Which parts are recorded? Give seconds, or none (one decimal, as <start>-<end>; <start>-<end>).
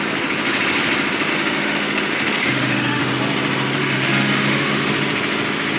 0.0-1.3; 3.0-3.8; 4.9-5.8